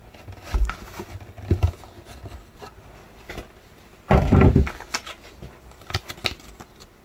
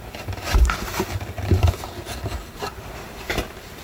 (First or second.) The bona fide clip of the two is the first